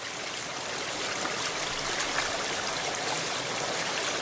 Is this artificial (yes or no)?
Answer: no